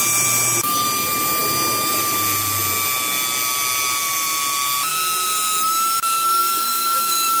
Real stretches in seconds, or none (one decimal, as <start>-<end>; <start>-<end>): 0.0-6.4